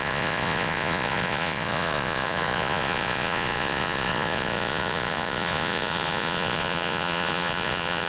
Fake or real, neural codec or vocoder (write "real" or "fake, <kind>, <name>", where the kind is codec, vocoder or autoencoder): fake, vocoder, Vocos